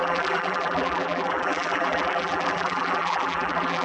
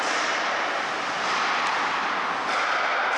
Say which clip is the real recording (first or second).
second